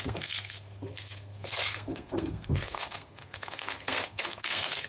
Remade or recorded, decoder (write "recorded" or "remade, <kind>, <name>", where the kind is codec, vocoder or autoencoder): remade, codec, SNAC